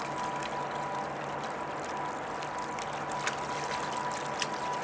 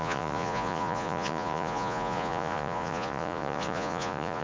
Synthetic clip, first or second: second